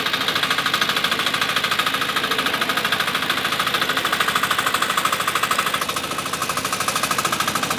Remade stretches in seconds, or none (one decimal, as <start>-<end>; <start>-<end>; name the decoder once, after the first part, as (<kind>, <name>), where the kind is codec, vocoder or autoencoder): none

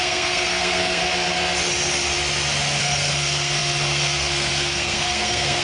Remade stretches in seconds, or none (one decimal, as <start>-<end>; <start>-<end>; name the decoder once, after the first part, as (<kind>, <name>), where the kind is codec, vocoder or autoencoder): 0.0-1.0 (codec, SNAC); 2.8-5.6

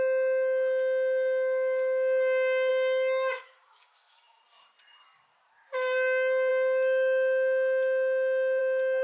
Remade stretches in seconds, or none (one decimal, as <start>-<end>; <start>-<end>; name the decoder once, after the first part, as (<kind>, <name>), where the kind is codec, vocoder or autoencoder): 2.7-4.4 (autoencoder, DAC-VAE)

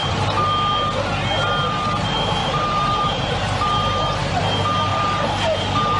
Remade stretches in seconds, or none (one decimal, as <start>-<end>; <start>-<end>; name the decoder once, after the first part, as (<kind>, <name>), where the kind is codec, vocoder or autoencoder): 2.4-4.4 (vocoder, BigVGAN v2); 4.9-6.0

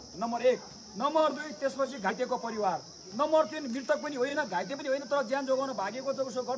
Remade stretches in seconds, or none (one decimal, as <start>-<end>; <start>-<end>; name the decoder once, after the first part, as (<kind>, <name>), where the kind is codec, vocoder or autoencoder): 1.2-2.1 (vocoder, Vocos); 4.3-4.8

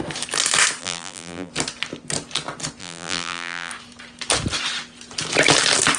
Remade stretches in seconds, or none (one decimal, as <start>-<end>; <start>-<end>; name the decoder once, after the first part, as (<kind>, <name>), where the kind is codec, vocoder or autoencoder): 0.8-1.5 (vocoder, BigVGAN v2); 2.8-3.7